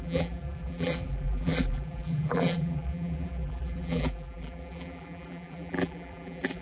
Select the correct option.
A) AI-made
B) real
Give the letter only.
A